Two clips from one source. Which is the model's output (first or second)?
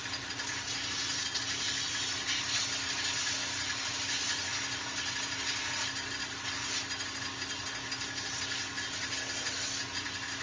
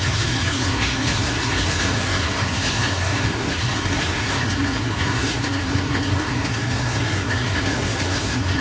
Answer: second